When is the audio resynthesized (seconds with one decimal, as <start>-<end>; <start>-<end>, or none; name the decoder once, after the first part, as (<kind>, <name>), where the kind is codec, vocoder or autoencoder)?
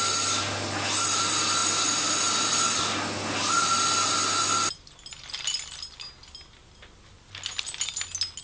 none